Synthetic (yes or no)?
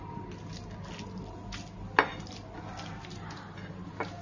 no